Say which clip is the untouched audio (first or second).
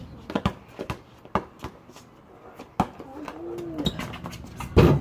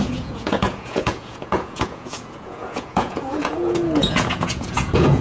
first